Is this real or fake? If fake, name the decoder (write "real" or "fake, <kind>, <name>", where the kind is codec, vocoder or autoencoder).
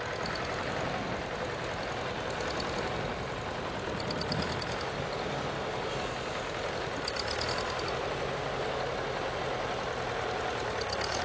real